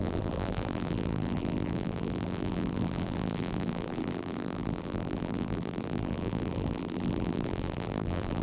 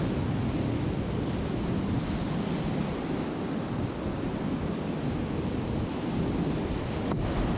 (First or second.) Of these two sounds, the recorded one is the second